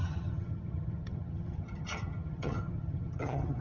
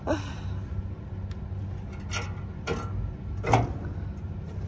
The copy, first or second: first